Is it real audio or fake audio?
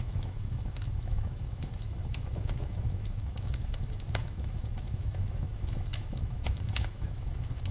fake